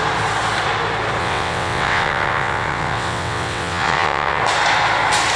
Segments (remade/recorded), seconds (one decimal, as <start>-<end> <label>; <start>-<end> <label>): 0.0-1.2 recorded; 1.2-4.4 remade; 4.4-5.4 recorded